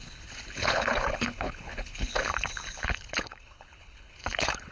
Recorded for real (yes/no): no